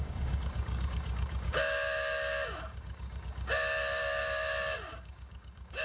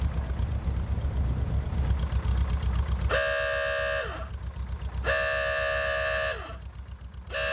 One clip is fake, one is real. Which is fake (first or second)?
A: first